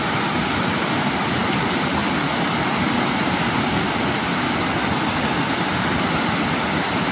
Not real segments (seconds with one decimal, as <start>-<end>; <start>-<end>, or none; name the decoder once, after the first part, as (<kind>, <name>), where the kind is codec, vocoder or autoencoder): none